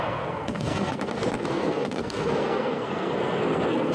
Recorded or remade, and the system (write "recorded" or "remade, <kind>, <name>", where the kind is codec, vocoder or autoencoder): remade, codec, SNAC